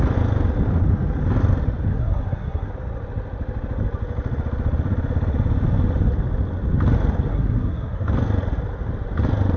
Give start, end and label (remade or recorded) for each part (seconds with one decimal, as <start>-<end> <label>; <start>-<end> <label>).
0.0-1.9 recorded; 1.9-2.7 remade; 2.7-7.3 recorded; 7.3-8.1 remade; 8.1-9.6 recorded